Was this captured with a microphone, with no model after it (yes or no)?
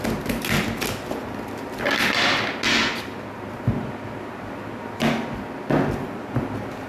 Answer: yes